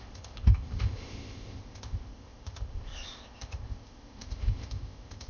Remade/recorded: remade